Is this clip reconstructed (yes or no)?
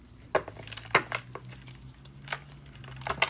no